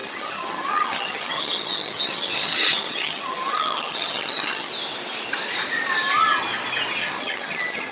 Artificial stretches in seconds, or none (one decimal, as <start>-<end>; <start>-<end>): 0.0-4.7; 7.0-7.9